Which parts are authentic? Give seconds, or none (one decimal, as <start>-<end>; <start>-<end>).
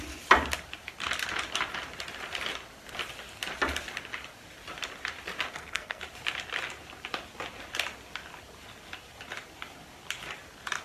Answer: 0.0-5.5; 6.0-10.8